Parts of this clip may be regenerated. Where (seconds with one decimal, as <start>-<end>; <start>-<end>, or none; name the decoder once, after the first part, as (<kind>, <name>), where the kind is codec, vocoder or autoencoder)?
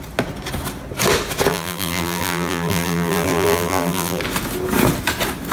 1.5-4.2 (vocoder, BigVGAN v2)